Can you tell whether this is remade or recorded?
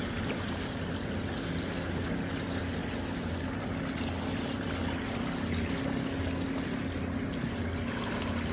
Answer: recorded